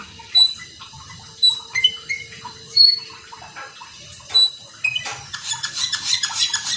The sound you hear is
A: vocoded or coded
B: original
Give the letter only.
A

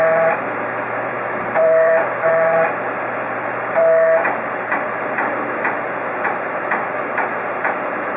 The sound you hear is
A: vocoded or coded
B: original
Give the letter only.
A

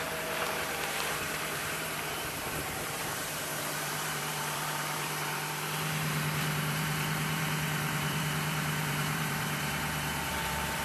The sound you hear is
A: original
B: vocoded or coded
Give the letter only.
B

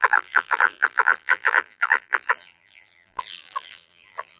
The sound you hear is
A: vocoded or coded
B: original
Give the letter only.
A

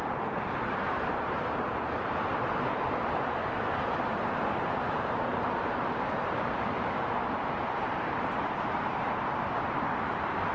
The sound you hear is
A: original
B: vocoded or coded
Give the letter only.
B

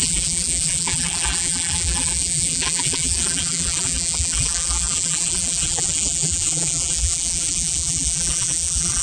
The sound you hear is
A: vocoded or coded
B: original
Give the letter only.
A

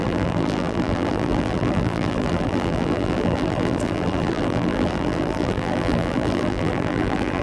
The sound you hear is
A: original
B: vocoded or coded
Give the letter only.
B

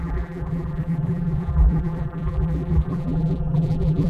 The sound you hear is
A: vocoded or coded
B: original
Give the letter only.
A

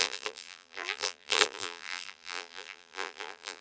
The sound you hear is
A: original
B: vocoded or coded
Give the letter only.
B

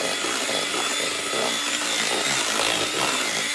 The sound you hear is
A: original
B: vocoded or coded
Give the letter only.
A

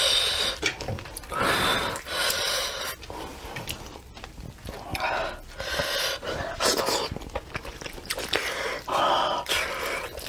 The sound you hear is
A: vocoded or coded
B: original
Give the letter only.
B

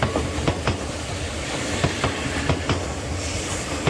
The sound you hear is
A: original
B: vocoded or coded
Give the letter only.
A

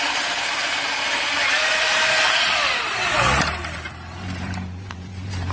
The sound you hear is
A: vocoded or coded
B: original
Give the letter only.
A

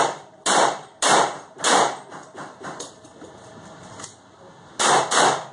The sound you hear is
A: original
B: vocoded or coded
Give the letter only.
B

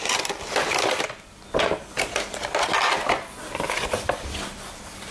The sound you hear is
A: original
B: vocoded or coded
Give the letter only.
B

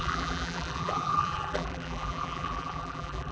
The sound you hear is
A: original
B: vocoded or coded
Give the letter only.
B